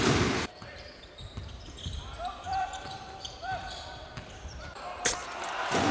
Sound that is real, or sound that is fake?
fake